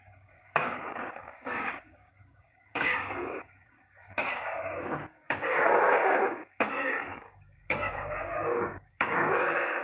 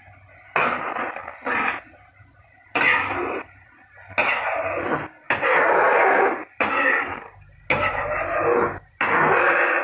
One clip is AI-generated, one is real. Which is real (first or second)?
second